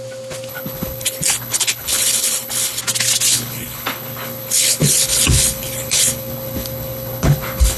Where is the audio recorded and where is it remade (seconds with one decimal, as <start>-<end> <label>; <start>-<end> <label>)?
0.0-0.5 recorded; 0.5-2.8 remade; 2.8-3.3 recorded; 3.3-7.8 remade